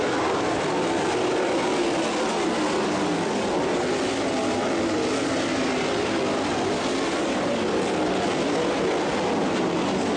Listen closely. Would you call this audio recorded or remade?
recorded